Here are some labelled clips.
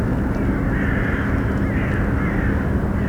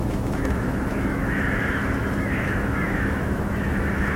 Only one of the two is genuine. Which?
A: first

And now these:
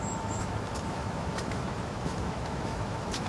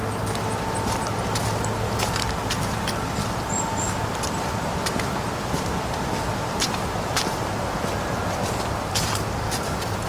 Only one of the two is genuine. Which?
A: second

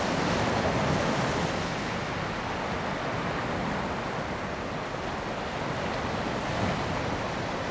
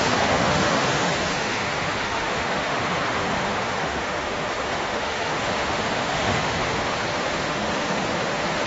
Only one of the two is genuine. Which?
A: first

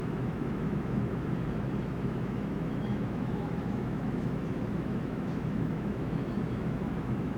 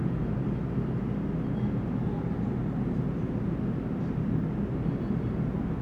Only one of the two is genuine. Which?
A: second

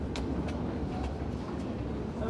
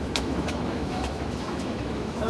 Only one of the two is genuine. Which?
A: first